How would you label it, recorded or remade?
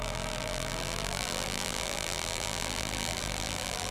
remade